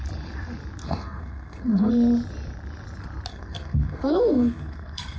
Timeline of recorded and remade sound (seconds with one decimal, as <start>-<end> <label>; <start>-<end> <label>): 0.0-0.8 recorded; 0.8-1.9 remade; 1.9-3.3 recorded; 3.3-5.2 remade